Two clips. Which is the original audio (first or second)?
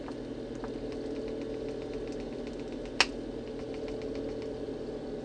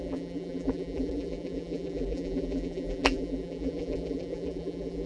first